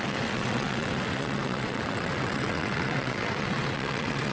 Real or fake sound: fake